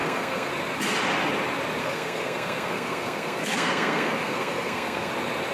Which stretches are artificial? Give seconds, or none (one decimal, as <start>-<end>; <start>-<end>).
0.0-0.5; 1.8-5.1